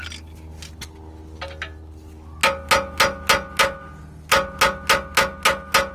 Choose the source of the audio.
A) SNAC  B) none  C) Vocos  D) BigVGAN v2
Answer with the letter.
B